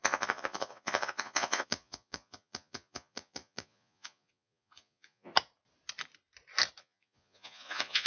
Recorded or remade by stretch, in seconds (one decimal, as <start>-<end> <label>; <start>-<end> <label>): 0.0-5.3 remade; 5.3-6.8 recorded; 6.8-8.1 remade